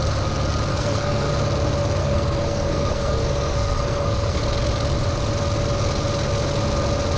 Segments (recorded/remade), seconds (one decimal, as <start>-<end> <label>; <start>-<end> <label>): 0.0-0.7 recorded; 0.7-1.3 remade; 1.3-2.0 recorded; 2.0-4.4 remade; 4.4-7.2 recorded